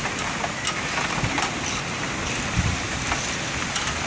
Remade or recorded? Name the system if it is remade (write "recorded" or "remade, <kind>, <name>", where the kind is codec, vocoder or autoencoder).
recorded